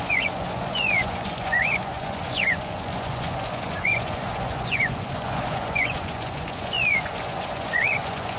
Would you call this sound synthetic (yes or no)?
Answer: yes